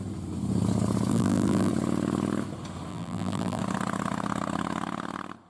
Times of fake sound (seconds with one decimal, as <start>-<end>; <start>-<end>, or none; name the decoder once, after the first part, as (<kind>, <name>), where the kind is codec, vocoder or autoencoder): 1.1-1.7 (vocoder, BigVGAN v2); 2.9-3.6